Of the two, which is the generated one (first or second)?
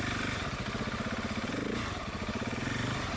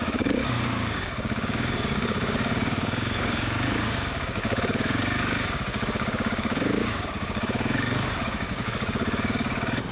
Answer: second